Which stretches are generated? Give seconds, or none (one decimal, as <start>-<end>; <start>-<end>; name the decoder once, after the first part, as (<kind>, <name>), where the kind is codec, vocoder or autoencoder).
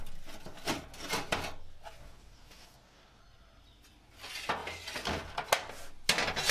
2.0-3.2 (codec, DAC)